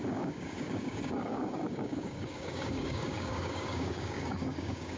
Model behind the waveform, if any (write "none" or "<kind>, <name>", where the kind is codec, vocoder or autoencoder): codec, DAC